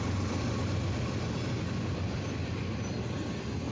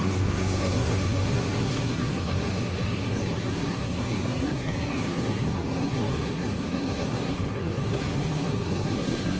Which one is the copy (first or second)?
second